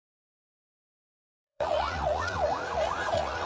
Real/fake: fake